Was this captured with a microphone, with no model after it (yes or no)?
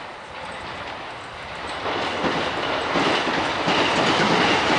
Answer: yes